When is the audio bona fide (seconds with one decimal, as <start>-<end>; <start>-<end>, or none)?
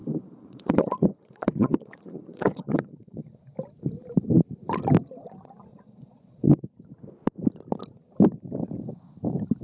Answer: 3.4-5.7; 6.6-9.6